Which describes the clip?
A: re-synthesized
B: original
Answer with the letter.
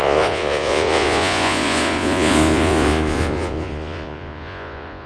A